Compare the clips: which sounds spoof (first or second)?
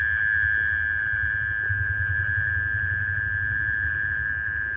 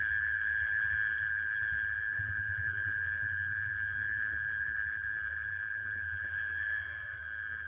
second